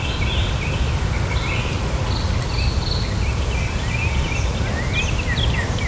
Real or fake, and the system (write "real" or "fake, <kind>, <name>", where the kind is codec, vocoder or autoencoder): real